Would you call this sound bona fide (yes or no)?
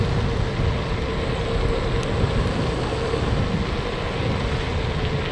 yes